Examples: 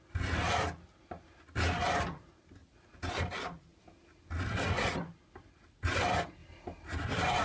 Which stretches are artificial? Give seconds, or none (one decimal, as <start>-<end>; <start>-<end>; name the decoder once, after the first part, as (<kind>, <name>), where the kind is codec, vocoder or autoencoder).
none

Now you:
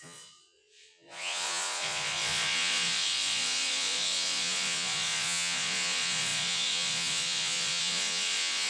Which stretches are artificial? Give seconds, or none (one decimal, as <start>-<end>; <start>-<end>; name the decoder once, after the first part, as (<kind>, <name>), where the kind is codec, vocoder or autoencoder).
0.0-8.7 (vocoder, Vocos)

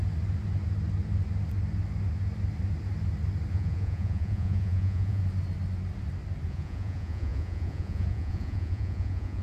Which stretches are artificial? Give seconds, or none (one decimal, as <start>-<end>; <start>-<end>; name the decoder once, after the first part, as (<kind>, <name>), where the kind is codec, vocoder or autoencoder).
3.5-5.2 (vocoder, Vocos); 6.5-9.4